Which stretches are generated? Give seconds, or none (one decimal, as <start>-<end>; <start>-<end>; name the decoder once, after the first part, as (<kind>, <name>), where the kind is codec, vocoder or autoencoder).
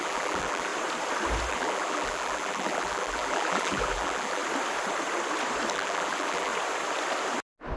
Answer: 0.0-0.7 (vocoder, BigVGAN v2); 1.5-4.4; 5.7-6.5